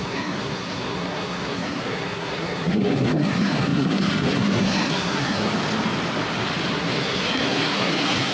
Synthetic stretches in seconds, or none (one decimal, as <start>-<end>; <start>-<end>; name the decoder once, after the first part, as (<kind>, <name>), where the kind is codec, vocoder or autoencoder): 0.0-5.5 (codec, SNAC); 6.7-8.3